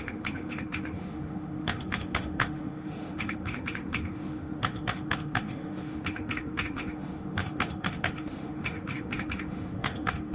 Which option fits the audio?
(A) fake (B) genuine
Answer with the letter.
A